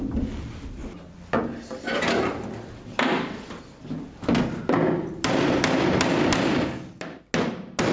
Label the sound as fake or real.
real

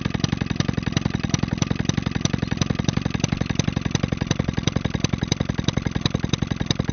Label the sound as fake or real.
real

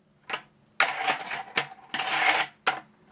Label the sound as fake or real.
real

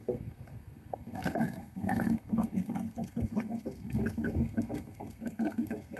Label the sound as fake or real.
fake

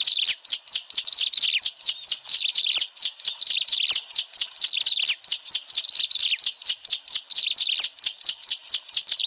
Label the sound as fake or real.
real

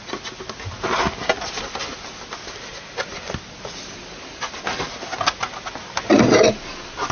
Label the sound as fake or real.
real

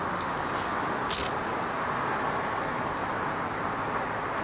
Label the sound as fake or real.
real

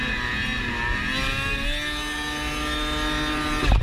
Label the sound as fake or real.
real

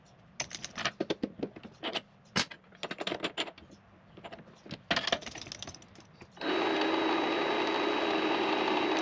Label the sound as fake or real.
real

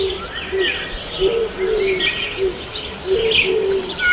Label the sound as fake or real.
real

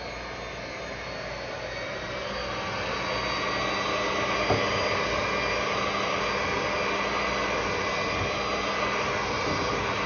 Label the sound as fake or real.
real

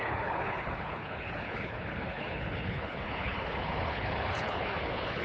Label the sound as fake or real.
fake